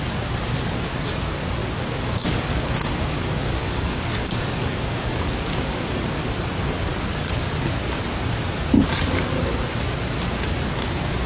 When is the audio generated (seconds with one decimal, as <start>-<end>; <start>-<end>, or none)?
1.6-5.9